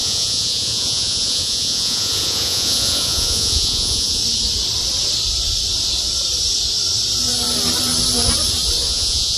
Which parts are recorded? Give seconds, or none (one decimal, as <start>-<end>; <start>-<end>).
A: 4.2-8.9